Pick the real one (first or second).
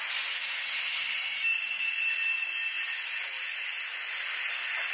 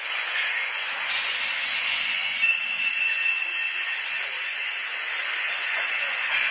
first